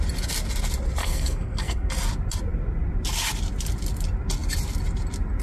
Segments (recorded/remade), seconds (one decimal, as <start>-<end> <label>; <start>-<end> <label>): 0.0-1.0 recorded; 1.0-1.9 remade; 1.9-5.4 recorded